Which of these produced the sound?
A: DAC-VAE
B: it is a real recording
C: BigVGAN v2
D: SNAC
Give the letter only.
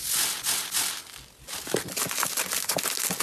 B